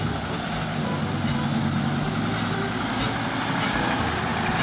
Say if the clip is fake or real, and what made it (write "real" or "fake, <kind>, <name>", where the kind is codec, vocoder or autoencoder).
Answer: real